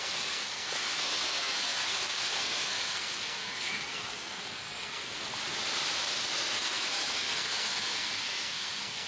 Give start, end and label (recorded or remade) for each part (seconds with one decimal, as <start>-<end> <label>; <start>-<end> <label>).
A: 0.0-5.2 remade; 5.2-6.3 recorded; 6.3-9.1 remade